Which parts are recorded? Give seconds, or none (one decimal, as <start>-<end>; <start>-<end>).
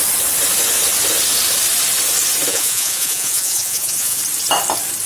0.0-2.5; 4.2-5.1